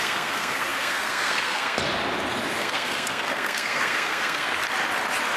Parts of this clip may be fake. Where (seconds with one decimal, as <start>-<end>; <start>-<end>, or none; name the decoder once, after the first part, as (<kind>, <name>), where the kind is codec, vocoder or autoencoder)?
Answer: 0.0-1.8 (codec, SNAC); 2.6-4.5